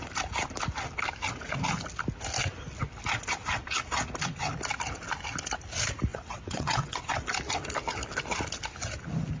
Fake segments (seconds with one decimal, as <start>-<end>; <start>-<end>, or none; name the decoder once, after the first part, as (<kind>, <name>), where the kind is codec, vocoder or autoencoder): 6.1-7.1 (vocoder, WaveNeXt)